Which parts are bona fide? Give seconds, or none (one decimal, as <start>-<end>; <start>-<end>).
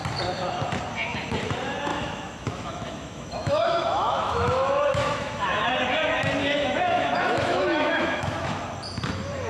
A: 0.0-1.9; 5.7-6.4; 8.6-9.5